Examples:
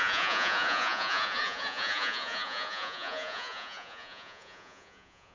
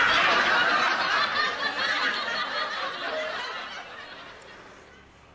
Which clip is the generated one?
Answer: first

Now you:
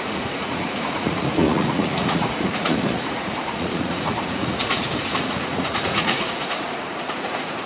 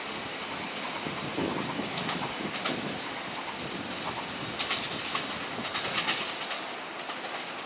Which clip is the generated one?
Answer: first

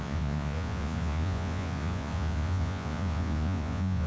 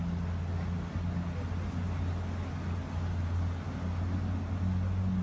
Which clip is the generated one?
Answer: first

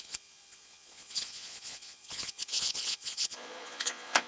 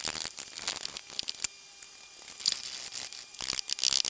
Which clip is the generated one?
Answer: first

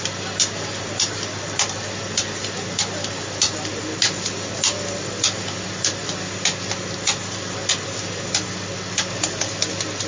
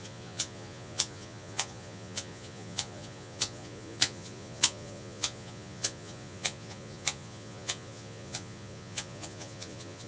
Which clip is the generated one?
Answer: second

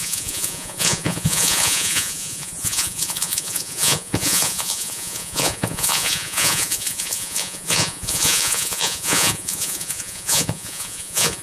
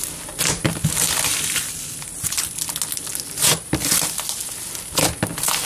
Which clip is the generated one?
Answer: first